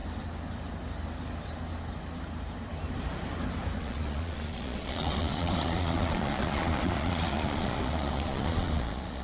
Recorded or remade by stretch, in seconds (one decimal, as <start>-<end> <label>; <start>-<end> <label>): 0.0-3.8 recorded; 3.8-9.2 remade

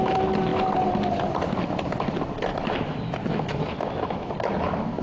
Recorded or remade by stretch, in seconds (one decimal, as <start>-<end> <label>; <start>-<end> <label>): 0.0-2.5 recorded; 2.5-4.3 remade; 4.3-5.0 recorded

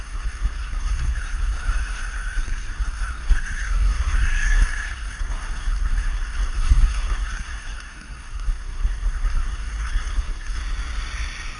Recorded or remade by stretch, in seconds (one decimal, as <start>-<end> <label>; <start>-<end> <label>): 0.0-10.6 remade; 10.6-11.6 recorded

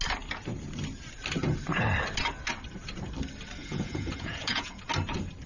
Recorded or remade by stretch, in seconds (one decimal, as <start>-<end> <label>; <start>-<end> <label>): 0.0-3.6 recorded; 3.6-4.8 remade; 4.8-5.5 recorded

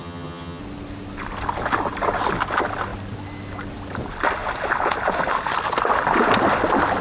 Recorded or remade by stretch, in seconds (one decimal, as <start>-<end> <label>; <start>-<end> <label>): 0.0-0.6 remade; 0.6-7.0 recorded